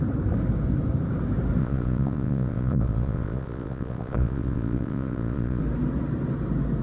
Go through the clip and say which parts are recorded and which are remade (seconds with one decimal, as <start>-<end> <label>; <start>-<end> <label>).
0.0-1.6 recorded; 1.6-5.6 remade; 5.6-6.8 recorded